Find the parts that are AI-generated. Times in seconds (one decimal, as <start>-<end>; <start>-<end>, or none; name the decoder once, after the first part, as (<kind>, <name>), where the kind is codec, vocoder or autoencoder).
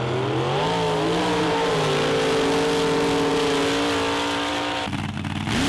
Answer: none